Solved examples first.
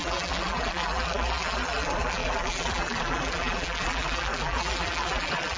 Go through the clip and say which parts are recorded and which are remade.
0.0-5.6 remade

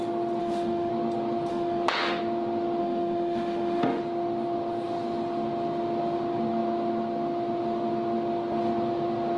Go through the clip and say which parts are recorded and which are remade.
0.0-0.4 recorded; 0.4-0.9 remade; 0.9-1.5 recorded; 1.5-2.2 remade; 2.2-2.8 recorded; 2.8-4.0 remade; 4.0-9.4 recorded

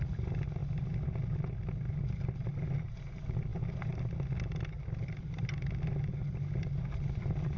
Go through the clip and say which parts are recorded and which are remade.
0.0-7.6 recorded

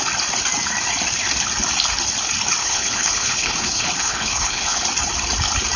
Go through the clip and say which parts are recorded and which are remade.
0.0-2.6 recorded; 2.6-4.8 remade; 4.8-5.8 recorded

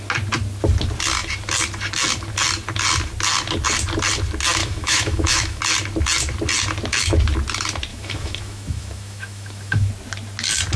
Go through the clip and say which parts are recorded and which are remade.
0.0-4.6 recorded; 4.6-5.6 remade; 5.6-7.9 recorded; 7.9-9.9 remade; 9.9-10.8 recorded

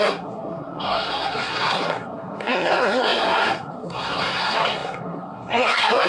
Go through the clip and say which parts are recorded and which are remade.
0.0-6.1 remade

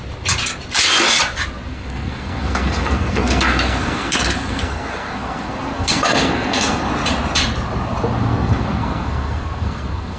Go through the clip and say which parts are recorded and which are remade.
0.0-1.7 recorded; 1.7-6.8 remade; 6.8-8.3 recorded; 8.3-10.2 remade

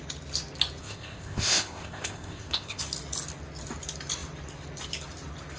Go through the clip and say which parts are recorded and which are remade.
0.0-0.8 recorded; 0.8-2.8 remade; 2.8-5.6 recorded